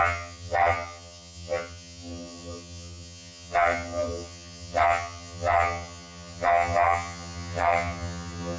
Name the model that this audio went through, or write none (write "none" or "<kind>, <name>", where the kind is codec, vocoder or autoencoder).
vocoder, HiFi-GAN